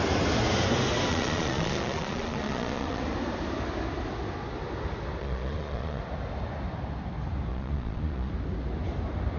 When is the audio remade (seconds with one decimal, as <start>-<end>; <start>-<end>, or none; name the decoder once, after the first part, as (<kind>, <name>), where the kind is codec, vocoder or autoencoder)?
1.1-3.0 (vocoder, Vocos); 5.2-6.0; 7.5-8.3